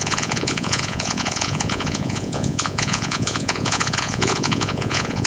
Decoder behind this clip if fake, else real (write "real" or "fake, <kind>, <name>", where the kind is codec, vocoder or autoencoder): fake, vocoder, Vocos